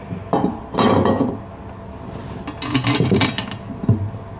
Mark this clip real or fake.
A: real